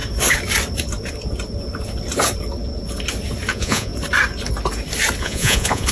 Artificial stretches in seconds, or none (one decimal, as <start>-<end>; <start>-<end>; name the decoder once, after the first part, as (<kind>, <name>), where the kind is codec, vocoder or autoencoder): 3.5-3.9 (vocoder, Vocos); 5.2-5.9

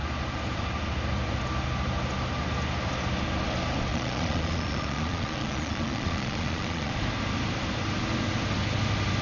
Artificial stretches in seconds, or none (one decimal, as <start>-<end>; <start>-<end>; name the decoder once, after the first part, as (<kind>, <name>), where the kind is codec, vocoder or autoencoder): 3.9-6.9 (vocoder, Vocos)

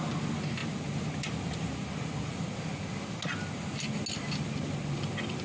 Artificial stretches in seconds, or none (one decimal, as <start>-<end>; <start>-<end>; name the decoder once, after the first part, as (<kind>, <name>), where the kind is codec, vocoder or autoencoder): none